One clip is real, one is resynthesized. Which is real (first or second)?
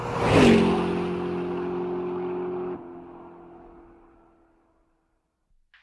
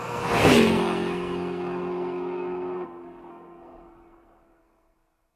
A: first